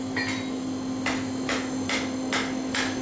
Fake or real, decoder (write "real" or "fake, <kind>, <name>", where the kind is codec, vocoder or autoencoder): real